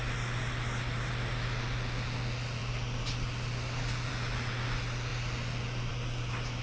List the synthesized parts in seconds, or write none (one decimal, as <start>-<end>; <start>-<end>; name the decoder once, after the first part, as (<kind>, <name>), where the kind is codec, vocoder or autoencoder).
none